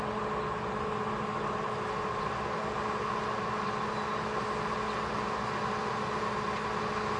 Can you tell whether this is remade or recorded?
recorded